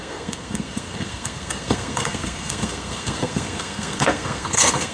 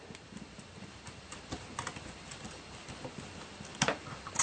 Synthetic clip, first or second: first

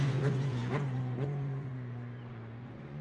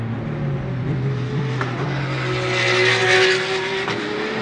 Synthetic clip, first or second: first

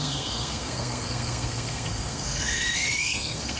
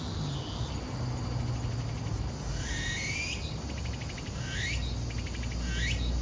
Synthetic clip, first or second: first